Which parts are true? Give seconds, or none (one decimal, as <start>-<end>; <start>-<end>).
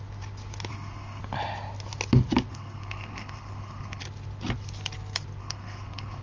0.0-0.7; 1.2-2.5; 4.0-5.4